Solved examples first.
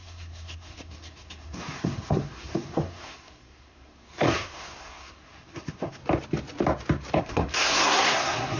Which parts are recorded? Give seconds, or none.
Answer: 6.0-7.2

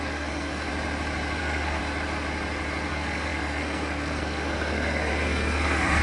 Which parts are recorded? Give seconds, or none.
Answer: 0.7-1.4; 1.8-2.9